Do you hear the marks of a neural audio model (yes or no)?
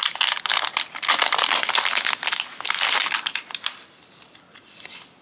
no